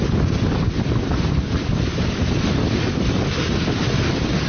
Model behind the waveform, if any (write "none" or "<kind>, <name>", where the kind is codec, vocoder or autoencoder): none